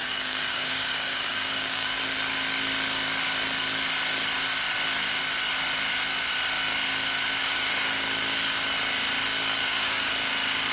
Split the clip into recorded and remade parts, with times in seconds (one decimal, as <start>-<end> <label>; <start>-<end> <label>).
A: 0.0-2.0 remade; 2.0-7.4 recorded; 7.4-8.0 remade; 8.0-9.6 recorded; 9.6-10.1 remade; 10.1-10.7 recorded